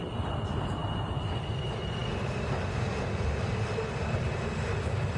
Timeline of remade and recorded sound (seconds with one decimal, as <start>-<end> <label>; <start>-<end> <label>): 0.0-5.2 recorded